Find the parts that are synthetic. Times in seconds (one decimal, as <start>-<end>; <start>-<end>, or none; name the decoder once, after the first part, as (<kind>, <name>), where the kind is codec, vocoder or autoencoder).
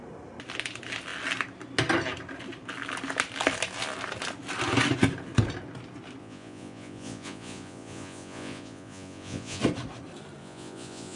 6.2-9.6 (vocoder, Vocos); 10.4-11.2